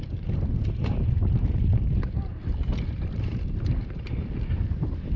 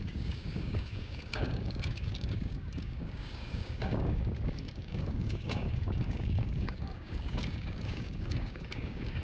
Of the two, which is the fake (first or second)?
second